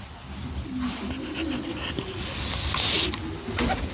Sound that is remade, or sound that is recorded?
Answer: recorded